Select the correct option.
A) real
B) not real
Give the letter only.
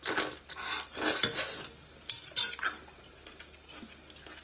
A